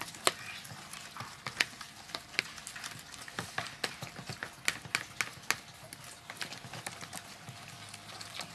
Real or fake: real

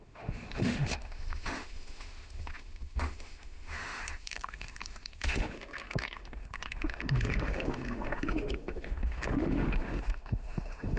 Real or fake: fake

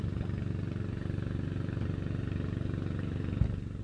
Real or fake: real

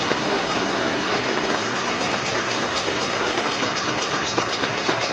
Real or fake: fake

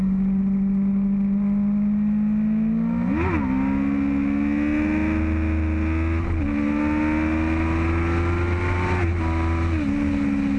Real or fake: real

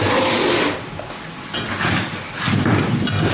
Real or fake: real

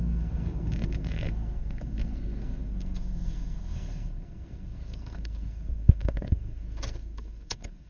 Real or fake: fake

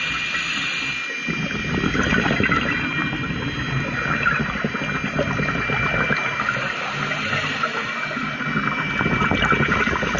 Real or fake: real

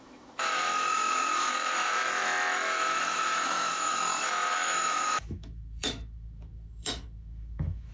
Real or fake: fake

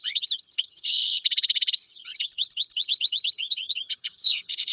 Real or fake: fake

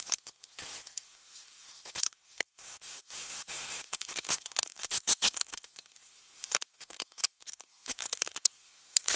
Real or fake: fake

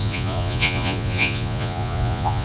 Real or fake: fake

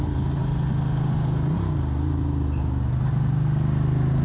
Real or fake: real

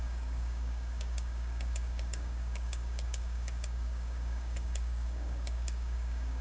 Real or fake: fake